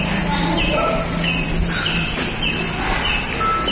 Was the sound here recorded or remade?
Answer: recorded